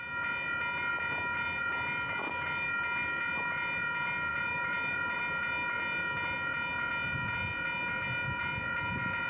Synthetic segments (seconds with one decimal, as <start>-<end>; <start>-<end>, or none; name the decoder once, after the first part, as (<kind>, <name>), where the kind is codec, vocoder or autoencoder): 4.3-5.2 (vocoder, BigVGAN v2)